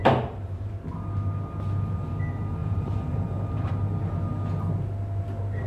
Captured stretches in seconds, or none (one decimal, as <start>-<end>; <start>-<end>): 0.7-2.6; 3.7-5.7